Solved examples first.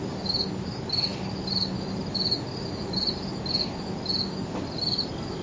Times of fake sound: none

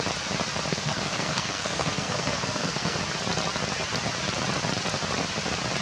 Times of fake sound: 0.7-3.0

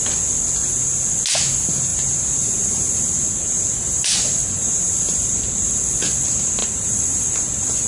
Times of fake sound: 1.9-5.4; 6.6-7.2

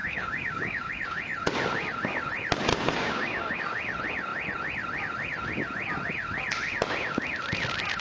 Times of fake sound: 0.0-0.9; 2.7-3.6

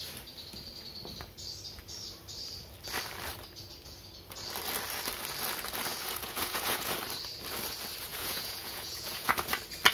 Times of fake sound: 5.9-6.9; 8.1-9.3

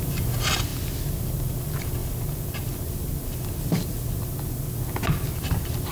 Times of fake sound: none

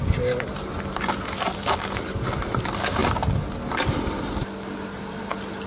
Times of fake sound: none